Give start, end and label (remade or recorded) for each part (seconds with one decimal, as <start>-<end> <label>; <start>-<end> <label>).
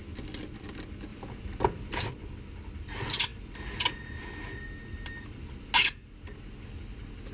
0.0-7.3 recorded